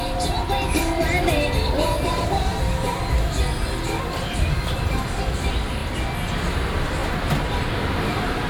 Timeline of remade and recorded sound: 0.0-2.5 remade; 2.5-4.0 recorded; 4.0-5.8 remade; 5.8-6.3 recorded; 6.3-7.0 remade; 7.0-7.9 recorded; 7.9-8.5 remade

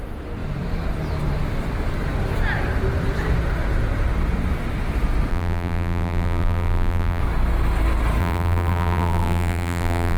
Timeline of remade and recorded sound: 0.0-5.3 recorded; 5.3-7.2 remade; 7.2-8.2 recorded; 8.2-10.2 remade

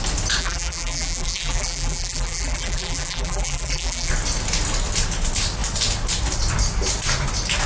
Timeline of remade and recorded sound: 0.0-0.4 recorded; 0.4-4.1 remade; 4.1-7.7 recorded

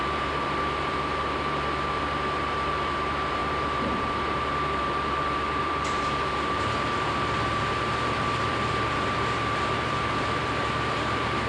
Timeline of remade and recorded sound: 0.0-11.5 remade

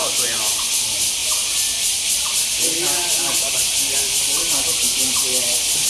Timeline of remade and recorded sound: 0.0-5.9 recorded

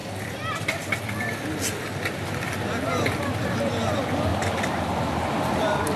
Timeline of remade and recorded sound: 0.0-4.3 recorded; 4.3-6.0 remade